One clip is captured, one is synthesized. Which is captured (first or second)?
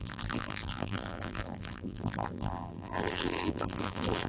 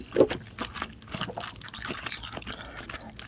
second